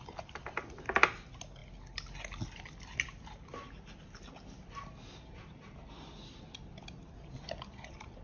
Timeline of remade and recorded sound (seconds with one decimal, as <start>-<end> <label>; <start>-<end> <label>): 0.0-8.2 recorded